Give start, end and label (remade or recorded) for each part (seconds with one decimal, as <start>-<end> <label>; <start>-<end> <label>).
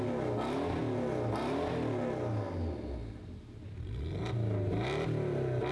0.0-5.7 recorded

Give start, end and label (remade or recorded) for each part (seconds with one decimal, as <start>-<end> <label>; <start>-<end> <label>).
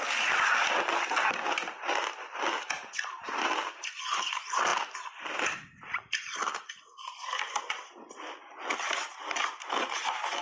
0.0-10.4 recorded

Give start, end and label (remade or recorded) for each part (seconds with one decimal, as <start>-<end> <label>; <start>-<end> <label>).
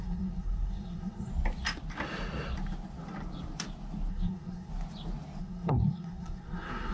0.0-1.3 remade; 1.3-4.1 recorded; 4.1-4.7 remade; 4.7-5.4 recorded; 5.4-6.9 remade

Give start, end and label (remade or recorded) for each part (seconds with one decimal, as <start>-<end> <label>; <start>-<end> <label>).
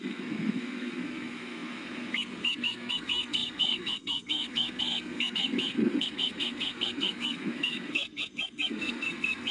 0.0-9.5 remade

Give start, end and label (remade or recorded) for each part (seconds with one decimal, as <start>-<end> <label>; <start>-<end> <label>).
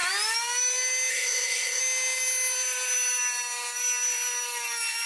0.0-1.1 recorded; 1.1-1.8 remade; 1.8-5.1 recorded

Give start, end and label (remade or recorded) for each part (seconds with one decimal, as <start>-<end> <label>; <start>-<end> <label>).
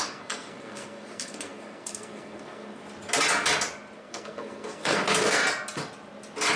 0.0-2.8 remade; 2.8-4.0 recorded; 4.0-5.4 remade; 5.4-6.6 recorded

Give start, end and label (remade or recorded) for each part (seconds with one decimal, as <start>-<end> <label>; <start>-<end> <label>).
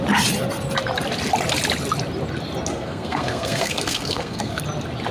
0.0-2.7 recorded; 2.7-4.6 remade; 4.6-5.1 recorded